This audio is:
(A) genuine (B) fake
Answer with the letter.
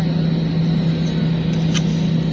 A